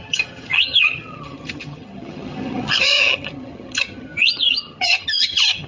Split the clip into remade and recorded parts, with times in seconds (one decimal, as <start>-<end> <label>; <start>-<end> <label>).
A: 0.0-5.7 remade